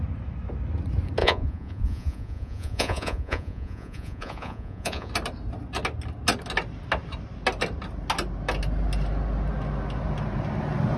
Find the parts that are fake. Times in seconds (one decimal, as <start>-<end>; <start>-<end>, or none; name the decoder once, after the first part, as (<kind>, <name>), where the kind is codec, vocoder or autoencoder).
1.2-5.1 (vocoder, Vocos)